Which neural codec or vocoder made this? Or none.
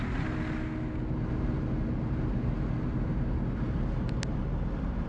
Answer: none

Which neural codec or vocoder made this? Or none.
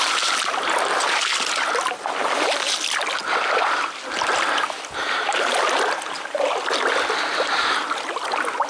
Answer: none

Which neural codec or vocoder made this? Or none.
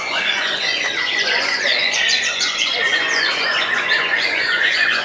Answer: vocoder, Vocos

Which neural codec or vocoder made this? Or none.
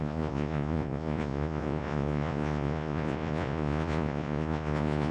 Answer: vocoder, Vocos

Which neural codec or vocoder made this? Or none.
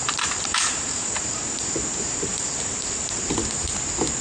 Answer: none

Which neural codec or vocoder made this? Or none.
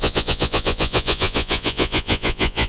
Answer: vocoder, Vocos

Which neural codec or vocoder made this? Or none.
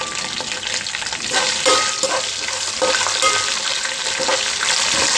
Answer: none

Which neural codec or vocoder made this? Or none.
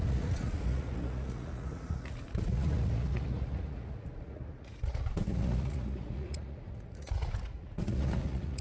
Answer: vocoder, Vocos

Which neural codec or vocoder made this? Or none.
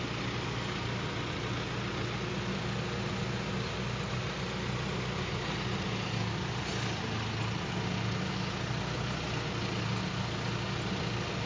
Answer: none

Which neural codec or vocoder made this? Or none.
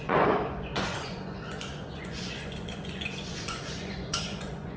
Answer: vocoder, Vocos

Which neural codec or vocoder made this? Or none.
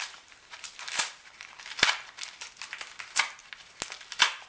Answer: none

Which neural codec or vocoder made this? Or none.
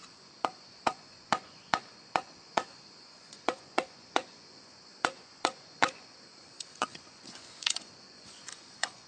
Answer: vocoder, Vocos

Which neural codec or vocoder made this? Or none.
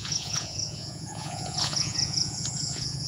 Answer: vocoder, Vocos